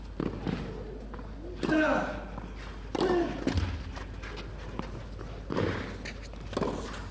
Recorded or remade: recorded